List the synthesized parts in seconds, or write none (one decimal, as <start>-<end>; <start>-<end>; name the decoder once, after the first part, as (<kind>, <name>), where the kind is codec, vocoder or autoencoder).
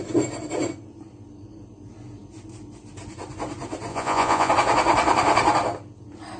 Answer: 3.9-4.5 (vocoder, Vocos)